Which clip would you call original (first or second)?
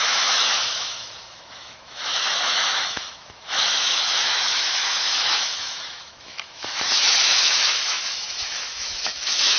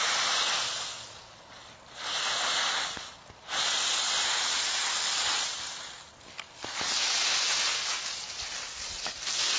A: second